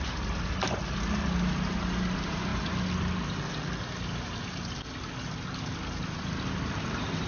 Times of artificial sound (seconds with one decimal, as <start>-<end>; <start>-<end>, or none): none